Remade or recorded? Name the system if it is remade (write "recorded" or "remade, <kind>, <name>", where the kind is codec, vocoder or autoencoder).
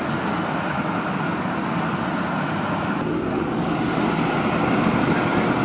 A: recorded